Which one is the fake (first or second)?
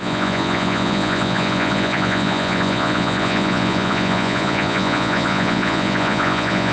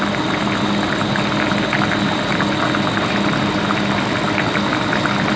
first